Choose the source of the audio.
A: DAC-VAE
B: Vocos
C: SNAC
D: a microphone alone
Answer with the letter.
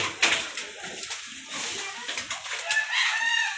D